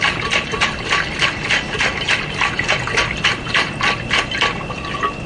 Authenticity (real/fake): real